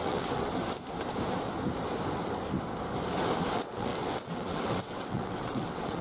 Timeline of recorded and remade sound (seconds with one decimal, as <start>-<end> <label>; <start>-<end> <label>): 0.0-0.5 remade; 0.5-3.4 recorded; 3.4-6.0 remade